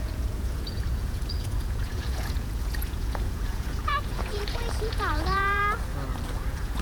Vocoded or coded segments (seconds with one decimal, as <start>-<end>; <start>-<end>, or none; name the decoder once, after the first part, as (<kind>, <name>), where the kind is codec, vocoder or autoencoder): 0.0-5.6 (vocoder, Vocos); 6.3-6.8